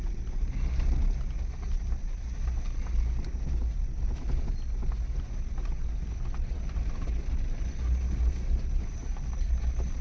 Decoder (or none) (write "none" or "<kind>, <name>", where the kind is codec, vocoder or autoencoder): none